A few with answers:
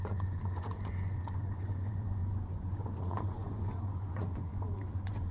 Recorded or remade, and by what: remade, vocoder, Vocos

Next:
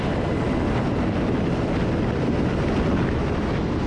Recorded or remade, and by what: recorded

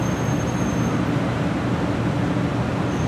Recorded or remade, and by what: recorded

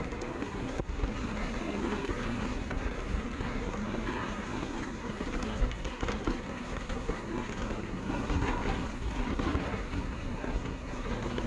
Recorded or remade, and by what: remade, codec, SNAC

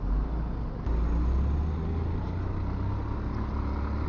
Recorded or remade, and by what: recorded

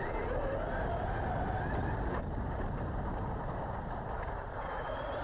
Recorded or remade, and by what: recorded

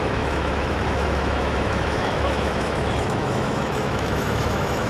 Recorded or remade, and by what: remade, autoencoder, DAC-VAE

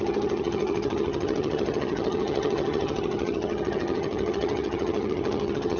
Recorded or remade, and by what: remade, vocoder, HiFi-GAN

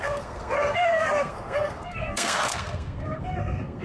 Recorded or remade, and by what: remade, codec, SNAC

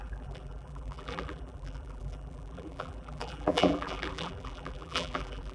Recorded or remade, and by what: remade, vocoder, BigVGAN v2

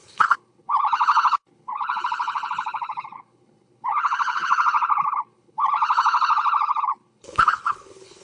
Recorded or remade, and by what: remade, codec, HILCodec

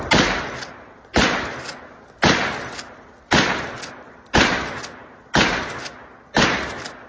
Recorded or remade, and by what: recorded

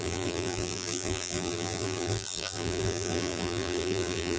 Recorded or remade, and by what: remade, vocoder, BigVGAN v2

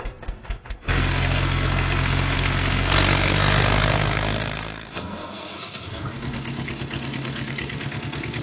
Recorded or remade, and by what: remade, codec, SNAC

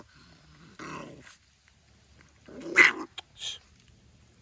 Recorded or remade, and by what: recorded